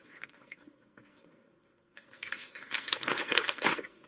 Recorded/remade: remade